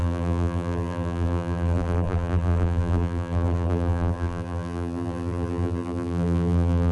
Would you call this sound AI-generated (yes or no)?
yes